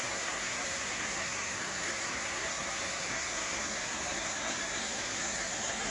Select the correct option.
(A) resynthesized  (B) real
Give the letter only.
A